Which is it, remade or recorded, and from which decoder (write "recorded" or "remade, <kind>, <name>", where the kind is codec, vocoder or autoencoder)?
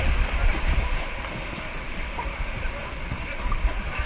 remade, vocoder, BigVGAN v2